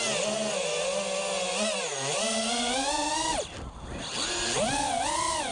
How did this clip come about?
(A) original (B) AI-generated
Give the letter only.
A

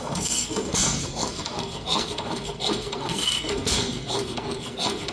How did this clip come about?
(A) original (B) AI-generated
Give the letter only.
B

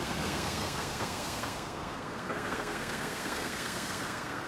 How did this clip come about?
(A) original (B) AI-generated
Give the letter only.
B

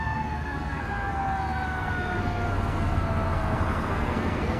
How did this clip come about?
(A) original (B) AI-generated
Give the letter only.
B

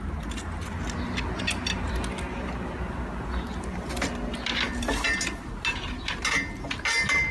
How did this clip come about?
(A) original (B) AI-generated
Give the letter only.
A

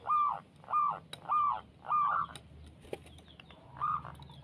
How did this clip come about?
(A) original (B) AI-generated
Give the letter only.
A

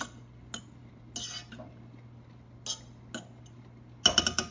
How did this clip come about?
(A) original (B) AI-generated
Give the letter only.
A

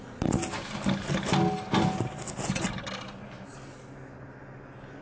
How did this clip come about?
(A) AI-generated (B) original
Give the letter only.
B